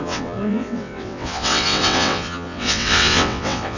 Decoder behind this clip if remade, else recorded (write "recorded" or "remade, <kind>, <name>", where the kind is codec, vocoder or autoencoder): remade, vocoder, WaveNeXt